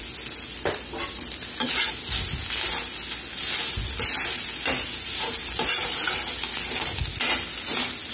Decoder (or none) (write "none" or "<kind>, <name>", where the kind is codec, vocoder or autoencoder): none